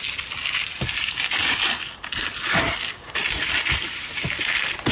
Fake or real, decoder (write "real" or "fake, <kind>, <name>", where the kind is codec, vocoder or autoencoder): real